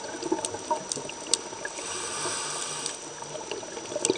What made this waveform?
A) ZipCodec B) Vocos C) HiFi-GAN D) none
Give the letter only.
D